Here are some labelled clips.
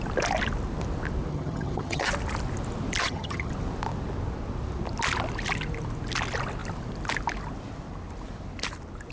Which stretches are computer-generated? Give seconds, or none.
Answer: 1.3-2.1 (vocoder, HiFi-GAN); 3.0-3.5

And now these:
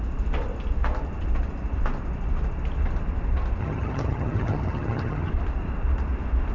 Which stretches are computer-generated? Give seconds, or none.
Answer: 3.6-5.3 (vocoder, HiFi-GAN)

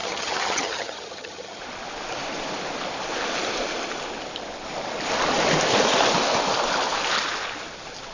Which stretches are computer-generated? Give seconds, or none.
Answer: 0.0-1.6 (vocoder, HiFi-GAN)

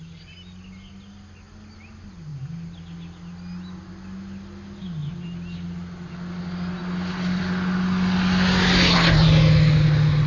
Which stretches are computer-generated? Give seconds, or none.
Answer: none

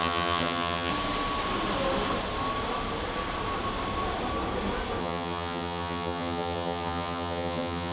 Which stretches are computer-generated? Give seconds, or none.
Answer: 0.0-0.9 (vocoder, HiFi-GAN); 5.0-7.9

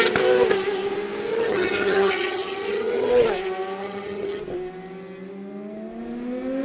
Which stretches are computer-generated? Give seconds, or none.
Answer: 1.3-3.1 (vocoder, HiFi-GAN); 3.8-4.4